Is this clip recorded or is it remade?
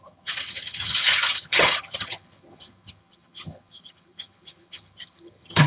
remade